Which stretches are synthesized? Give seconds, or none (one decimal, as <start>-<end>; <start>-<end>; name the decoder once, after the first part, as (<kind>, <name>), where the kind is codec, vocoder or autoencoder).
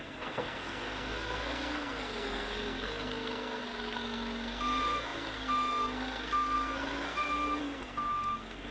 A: 0.0-8.7 (codec, SNAC)